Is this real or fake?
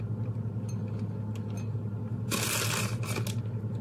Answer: real